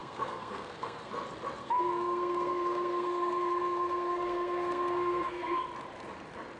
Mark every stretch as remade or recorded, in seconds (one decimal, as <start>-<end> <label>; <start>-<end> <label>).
0.0-1.1 remade; 1.1-1.6 recorded; 1.6-5.6 remade; 5.6-6.6 recorded